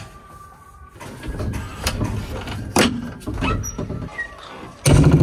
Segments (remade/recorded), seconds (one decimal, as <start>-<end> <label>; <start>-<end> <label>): 0.0-1.7 recorded; 1.7-4.8 remade; 4.8-5.2 recorded